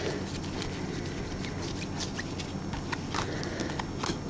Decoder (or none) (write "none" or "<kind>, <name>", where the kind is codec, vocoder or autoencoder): none